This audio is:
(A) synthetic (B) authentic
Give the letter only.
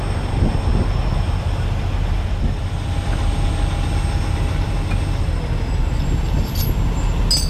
B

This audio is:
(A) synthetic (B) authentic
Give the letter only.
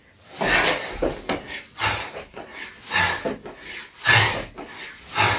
B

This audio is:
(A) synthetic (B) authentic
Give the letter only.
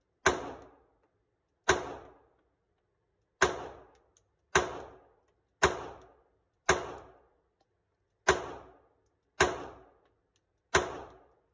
B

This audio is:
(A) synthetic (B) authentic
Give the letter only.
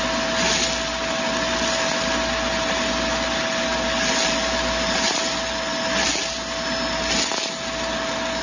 B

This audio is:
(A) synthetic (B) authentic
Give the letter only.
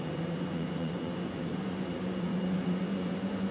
A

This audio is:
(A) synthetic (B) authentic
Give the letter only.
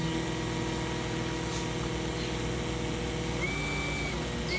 B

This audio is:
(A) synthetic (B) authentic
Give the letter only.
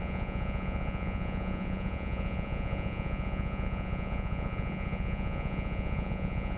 A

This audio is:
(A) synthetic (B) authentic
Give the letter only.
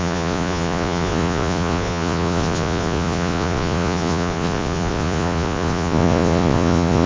A